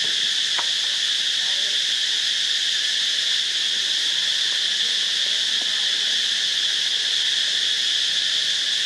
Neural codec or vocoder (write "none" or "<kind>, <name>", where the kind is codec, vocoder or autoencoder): none